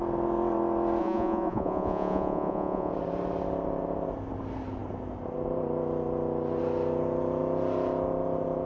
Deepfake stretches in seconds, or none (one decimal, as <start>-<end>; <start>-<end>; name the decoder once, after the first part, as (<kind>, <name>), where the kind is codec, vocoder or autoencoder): 1.0-2.9 (vocoder, Vocos)